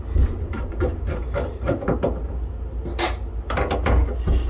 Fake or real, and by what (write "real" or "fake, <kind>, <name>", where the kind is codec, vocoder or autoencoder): real